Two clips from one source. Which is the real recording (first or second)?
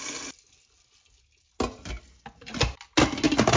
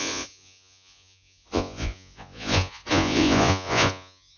first